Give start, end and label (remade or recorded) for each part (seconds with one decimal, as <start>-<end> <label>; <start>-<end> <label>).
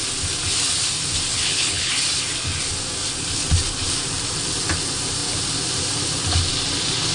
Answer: 0.0-1.3 recorded; 1.3-1.9 remade; 1.9-7.1 recorded